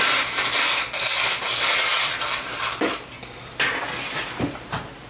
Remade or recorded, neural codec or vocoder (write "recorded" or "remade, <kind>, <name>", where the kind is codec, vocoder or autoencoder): recorded